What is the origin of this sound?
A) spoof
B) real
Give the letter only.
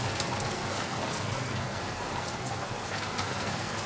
A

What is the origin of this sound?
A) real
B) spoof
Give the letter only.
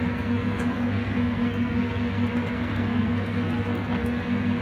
B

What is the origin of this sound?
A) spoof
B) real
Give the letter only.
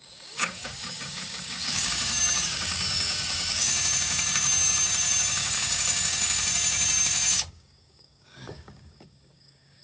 A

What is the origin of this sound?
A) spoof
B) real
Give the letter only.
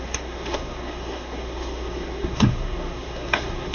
A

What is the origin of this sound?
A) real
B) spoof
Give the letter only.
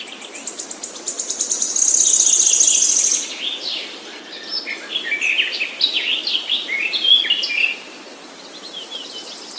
A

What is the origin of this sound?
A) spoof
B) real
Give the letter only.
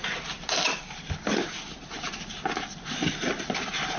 B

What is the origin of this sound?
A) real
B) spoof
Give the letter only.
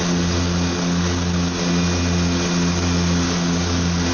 A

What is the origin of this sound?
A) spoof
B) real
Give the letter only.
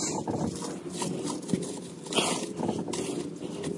B